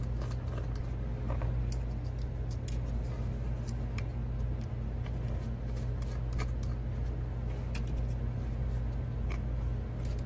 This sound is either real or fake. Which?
real